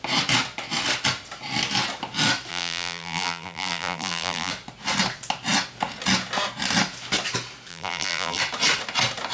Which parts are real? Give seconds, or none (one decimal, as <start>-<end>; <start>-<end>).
0.0-2.5; 4.5-7.7; 8.4-9.3